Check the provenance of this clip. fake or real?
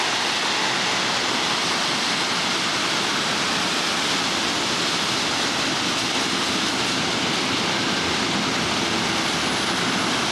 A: real